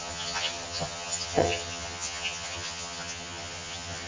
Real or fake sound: fake